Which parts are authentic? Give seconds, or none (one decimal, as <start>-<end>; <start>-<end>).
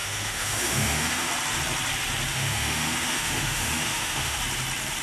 1.3-2.3; 4.4-5.0